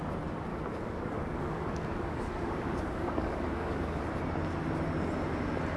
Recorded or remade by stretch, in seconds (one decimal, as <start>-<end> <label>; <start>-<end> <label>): 0.0-0.5 recorded; 0.5-4.0 remade; 4.0-5.8 recorded